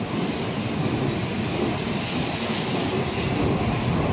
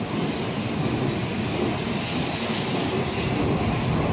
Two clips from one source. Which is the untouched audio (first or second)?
second